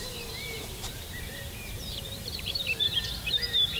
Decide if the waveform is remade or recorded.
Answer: remade